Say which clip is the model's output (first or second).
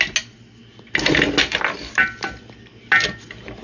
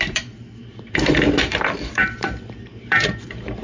second